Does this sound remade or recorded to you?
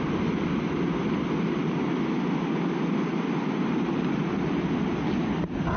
recorded